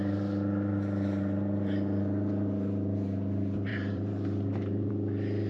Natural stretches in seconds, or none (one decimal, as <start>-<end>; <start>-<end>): 0.0-3.7; 4.9-5.5